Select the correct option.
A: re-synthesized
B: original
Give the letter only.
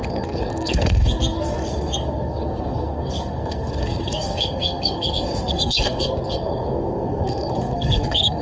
A